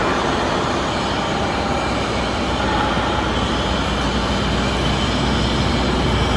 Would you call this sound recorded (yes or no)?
yes